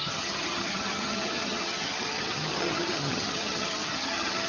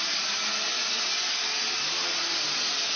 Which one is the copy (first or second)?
first